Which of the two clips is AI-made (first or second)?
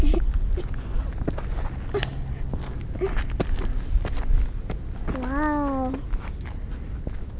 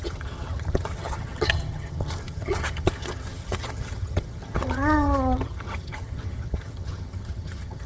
second